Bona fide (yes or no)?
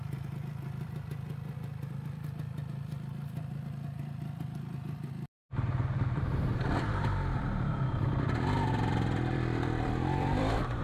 no